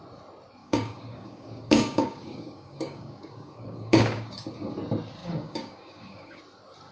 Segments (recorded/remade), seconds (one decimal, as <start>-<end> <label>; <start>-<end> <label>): 0.0-0.6 recorded; 0.6-4.7 remade; 4.7-5.2 recorded; 5.2-6.4 remade; 6.4-6.9 recorded